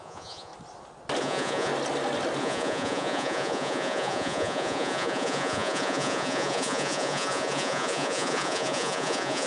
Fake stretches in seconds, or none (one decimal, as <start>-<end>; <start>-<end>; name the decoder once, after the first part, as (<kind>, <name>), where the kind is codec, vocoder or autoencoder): 0.0-0.5 (vocoder, Vocos); 1.2-1.7; 2.4-9.5